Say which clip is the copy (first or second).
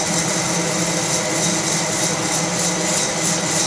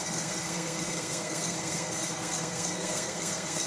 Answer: second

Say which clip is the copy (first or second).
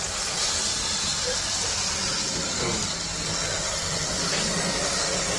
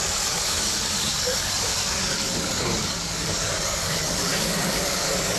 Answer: second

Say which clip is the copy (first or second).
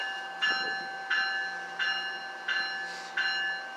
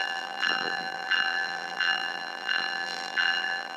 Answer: second